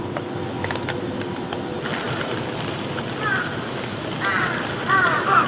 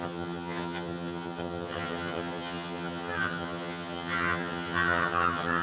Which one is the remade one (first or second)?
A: second